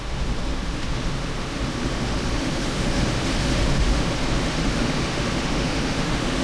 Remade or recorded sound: remade